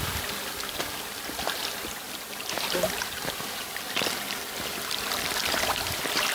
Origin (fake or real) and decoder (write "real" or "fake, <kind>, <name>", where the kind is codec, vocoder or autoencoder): fake, vocoder, BigVGAN v2